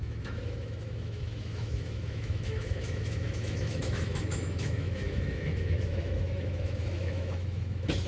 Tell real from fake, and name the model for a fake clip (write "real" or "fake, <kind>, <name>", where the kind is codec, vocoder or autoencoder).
fake, autoencoder, DAC-VAE